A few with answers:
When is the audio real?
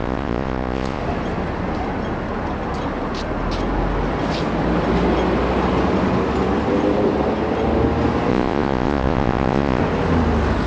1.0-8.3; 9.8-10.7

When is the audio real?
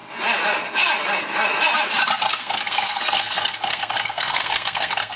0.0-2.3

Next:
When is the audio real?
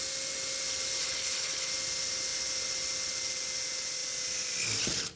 0.0-1.0; 1.7-5.2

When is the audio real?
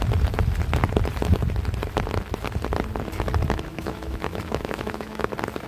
0.0-3.7; 5.3-5.7